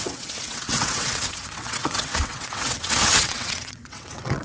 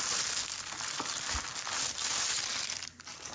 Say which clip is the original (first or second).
second